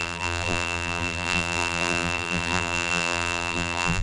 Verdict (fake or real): fake